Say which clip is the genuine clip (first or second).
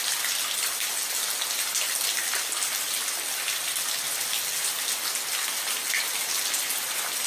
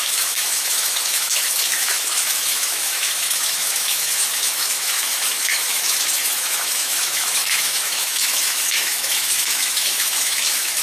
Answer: first